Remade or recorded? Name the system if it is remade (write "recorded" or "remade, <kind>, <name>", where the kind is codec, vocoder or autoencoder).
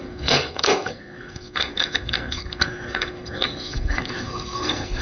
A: remade, codec, SNAC